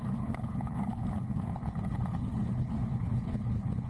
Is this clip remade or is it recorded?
remade